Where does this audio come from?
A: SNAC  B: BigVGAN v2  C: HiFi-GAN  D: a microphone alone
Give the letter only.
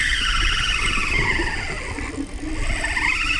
D